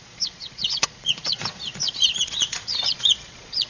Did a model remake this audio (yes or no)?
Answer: yes